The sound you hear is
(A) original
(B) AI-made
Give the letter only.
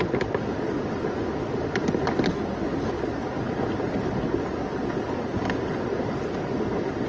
A